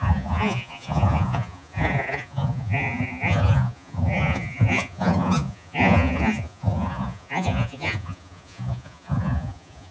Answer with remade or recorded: remade